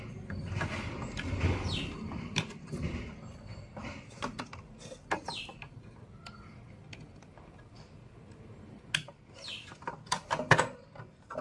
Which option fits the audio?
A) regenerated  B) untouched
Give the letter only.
B